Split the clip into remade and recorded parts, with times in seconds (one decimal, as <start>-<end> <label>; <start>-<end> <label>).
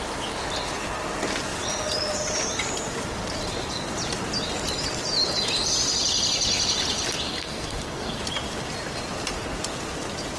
0.0-7.3 recorded; 7.3-8.2 remade; 8.2-10.4 recorded